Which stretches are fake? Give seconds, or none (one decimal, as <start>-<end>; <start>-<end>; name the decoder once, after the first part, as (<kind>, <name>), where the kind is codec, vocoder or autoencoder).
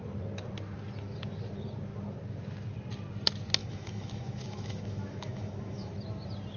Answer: 3.6-5.9 (autoencoder, DAC-VAE)